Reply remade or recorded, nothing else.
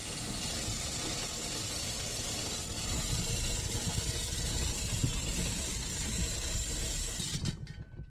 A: recorded